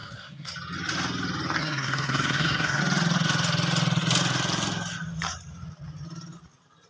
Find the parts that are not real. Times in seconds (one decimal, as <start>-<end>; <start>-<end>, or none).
0.0-0.5; 1.6-2.8